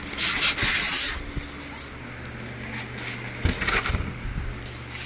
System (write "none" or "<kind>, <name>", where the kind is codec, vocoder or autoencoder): none